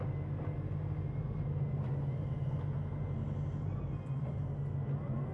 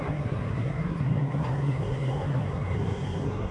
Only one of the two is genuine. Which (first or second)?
first